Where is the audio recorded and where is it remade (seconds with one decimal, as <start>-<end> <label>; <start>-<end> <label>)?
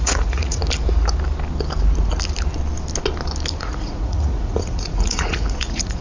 0.0-0.6 remade; 0.6-3.6 recorded; 3.6-6.0 remade